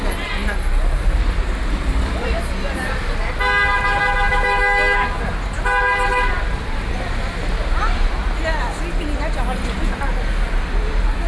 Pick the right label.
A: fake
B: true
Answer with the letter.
B